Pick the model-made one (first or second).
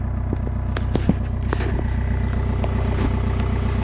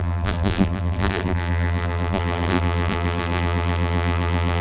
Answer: second